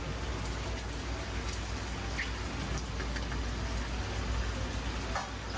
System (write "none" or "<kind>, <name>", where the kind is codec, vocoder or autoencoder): none